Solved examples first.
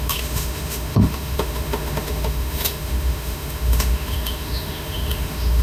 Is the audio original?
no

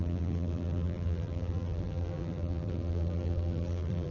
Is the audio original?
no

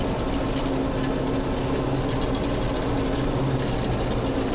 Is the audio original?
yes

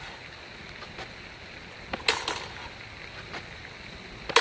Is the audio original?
yes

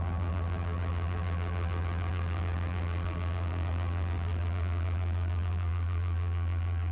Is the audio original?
no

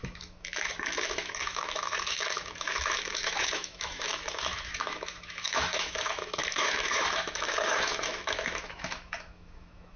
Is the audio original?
no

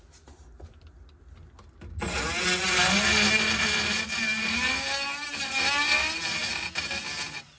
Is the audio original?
yes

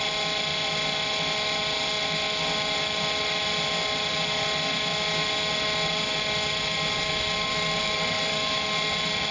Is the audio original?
yes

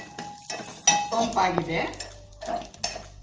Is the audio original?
yes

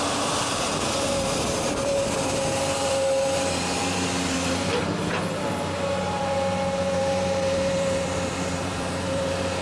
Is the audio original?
no